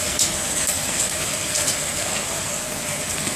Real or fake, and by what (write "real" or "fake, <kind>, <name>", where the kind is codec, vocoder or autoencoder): fake, codec, SNAC